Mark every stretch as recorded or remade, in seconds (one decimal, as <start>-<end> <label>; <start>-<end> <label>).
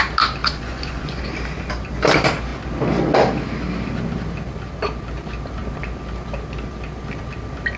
0.0-0.4 recorded; 0.4-1.2 remade; 1.2-7.8 recorded